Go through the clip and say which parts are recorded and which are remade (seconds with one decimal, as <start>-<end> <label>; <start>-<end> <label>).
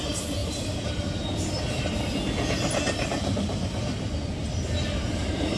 0.0-0.4 recorded; 0.4-0.9 remade; 0.9-5.6 recorded